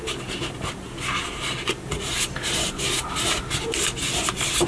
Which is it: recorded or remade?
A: recorded